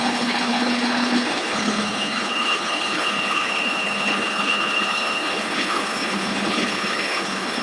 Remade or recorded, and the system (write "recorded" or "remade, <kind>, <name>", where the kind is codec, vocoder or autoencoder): remade, codec, HILCodec